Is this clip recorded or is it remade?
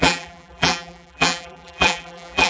remade